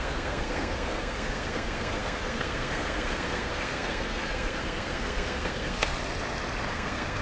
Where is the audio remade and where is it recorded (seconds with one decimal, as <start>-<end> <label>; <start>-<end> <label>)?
0.0-5.9 remade; 5.9-6.7 recorded; 6.7-7.2 remade